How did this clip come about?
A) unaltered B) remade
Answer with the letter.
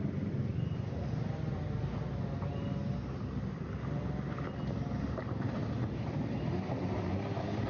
A